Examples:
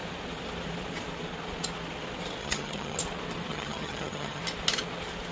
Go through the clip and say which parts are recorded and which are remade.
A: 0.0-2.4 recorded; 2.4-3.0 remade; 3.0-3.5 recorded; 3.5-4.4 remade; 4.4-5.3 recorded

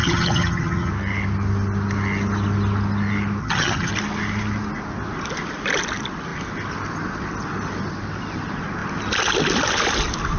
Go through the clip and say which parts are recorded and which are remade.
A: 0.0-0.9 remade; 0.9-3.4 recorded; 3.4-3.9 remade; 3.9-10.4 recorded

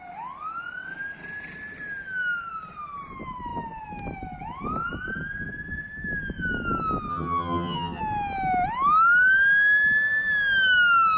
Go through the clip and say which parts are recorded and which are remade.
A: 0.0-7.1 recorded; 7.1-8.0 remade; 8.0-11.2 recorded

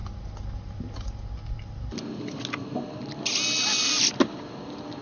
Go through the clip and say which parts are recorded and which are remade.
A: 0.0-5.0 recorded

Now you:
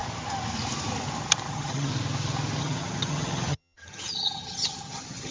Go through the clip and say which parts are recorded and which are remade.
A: 0.0-1.5 recorded; 1.5-1.9 remade; 1.9-2.6 recorded; 2.6-5.3 remade